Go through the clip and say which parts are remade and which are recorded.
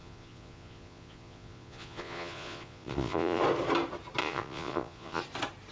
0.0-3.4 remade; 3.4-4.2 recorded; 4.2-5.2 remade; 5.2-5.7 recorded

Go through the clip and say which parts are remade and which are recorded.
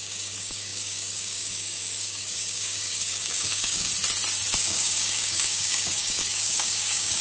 0.0-3.9 remade; 3.9-4.6 recorded; 4.6-7.2 remade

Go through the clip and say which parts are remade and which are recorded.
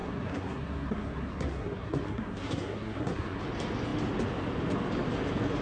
0.0-3.4 remade; 3.4-5.6 recorded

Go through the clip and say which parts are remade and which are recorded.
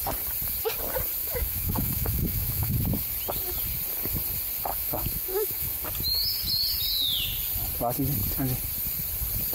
0.0-1.2 recorded; 1.2-2.7 remade; 2.7-4.7 recorded; 4.7-5.9 remade; 5.9-9.5 recorded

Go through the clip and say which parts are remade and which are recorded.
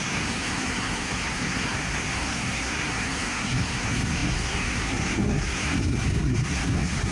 0.0-7.1 remade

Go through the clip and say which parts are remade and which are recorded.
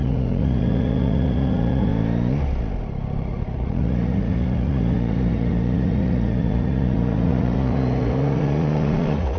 0.0-1.9 remade; 1.9-3.2 recorded; 3.2-9.4 remade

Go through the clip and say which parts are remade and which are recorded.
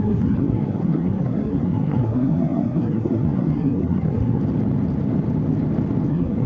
0.0-4.4 remade; 4.4-6.1 recorded; 6.1-6.5 remade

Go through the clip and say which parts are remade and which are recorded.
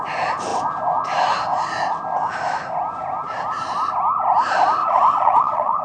0.0-4.8 recorded; 4.8-5.8 remade